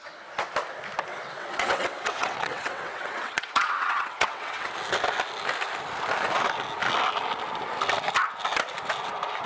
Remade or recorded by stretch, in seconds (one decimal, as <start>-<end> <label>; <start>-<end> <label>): 0.0-1.1 recorded; 1.1-4.7 remade; 4.7-9.5 recorded